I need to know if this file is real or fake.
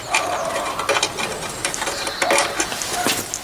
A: real